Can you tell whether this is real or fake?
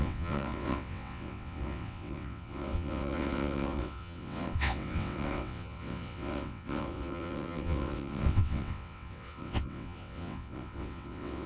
fake